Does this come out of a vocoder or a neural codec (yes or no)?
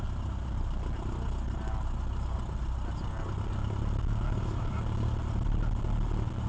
no